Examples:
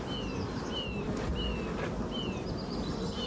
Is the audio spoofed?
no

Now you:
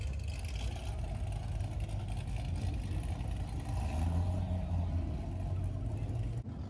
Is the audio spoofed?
no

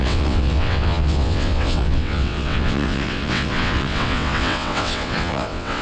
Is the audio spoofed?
yes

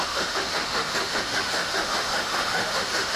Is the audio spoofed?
yes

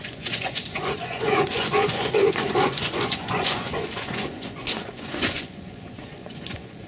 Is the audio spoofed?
yes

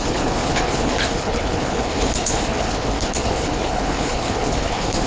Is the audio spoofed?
yes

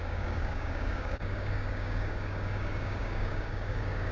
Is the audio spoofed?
yes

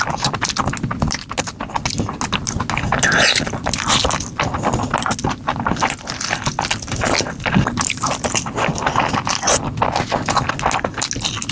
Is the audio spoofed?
no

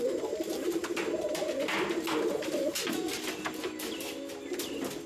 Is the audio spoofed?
no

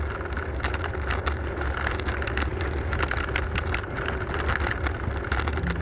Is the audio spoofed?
no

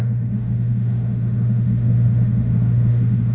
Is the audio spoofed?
yes